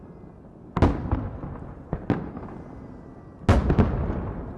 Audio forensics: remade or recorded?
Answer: recorded